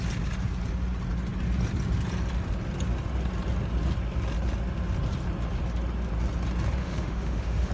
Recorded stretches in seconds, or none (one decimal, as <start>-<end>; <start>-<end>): 0.0-6.8